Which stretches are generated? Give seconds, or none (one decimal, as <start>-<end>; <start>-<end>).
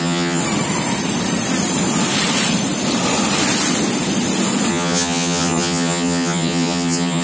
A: 0.0-0.4; 4.7-7.2